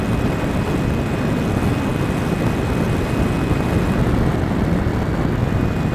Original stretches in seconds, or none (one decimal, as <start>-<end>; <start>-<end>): 0.0-5.9